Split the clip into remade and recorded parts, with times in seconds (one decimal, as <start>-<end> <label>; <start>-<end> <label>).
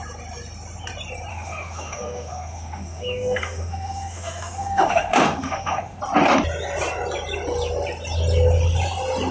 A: 0.0-1.3 recorded; 1.3-6.0 remade; 6.0-9.3 recorded